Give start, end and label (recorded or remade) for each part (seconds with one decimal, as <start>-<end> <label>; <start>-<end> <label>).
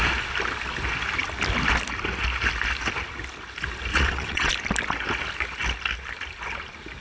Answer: 0.0-3.9 recorded; 3.9-4.5 remade; 4.5-7.0 recorded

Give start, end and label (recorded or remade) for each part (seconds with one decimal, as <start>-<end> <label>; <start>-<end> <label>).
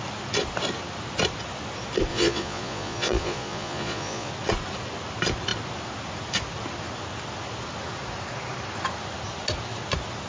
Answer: 0.0-2.1 recorded; 2.1-4.3 remade; 4.3-10.3 recorded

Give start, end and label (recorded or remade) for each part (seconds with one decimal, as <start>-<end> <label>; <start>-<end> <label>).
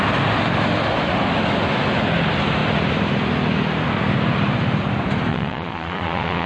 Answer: 0.0-5.3 recorded; 5.3-6.5 remade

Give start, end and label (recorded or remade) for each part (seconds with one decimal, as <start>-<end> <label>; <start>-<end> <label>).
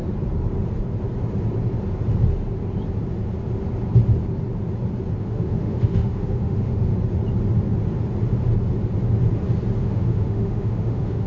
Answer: 0.0-5.2 recorded; 5.2-6.9 remade; 6.9-9.8 recorded; 9.8-11.3 remade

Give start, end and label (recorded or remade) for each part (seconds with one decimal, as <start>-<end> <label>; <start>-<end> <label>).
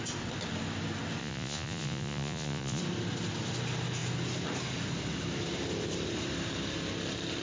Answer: 0.0-1.2 recorded; 1.2-2.8 remade; 2.8-7.4 recorded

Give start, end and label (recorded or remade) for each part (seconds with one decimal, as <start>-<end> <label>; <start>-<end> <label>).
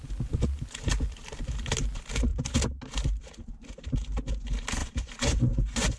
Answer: 0.0-4.8 recorded; 4.8-6.0 remade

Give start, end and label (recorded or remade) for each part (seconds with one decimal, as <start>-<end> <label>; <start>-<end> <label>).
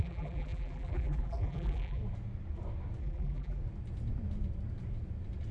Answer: 0.0-2.0 remade; 2.0-3.0 recorded; 3.0-3.6 remade; 3.6-5.5 recorded